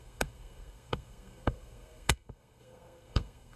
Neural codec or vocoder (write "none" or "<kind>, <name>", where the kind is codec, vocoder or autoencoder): codec, SNAC